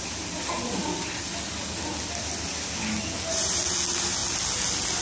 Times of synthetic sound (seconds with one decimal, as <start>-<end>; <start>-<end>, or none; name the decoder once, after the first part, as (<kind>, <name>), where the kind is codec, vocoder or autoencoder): none